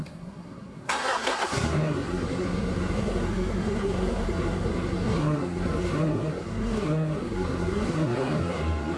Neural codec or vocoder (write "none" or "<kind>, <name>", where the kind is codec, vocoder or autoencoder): codec, SNAC